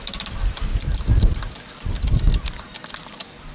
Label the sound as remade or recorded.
recorded